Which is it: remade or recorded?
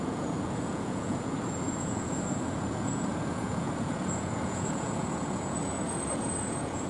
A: remade